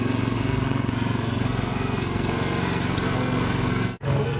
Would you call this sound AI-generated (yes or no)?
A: yes